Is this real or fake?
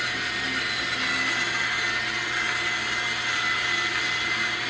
real